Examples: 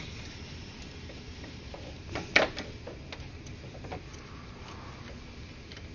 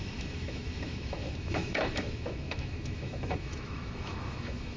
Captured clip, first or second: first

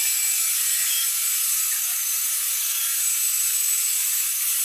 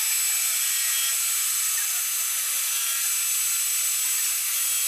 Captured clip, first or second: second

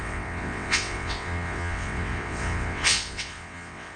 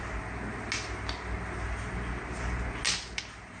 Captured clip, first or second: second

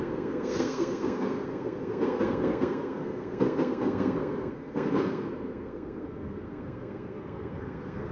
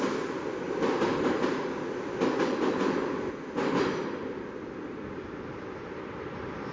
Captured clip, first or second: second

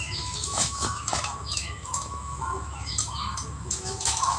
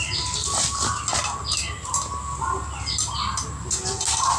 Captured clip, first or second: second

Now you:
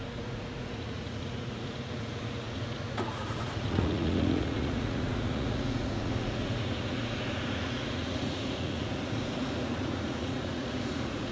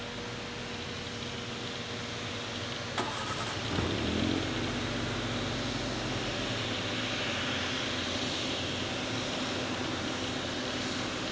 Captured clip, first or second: second